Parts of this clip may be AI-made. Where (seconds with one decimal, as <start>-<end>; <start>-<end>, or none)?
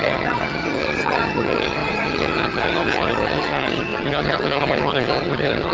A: 0.0-5.7